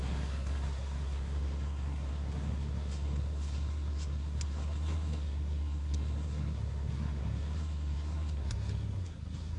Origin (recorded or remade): remade